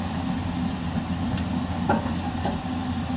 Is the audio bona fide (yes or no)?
yes